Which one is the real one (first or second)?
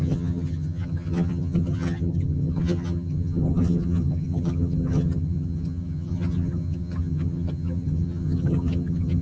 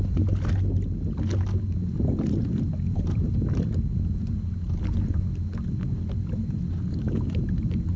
second